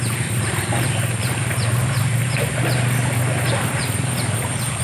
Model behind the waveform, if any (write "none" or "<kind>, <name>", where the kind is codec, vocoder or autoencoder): none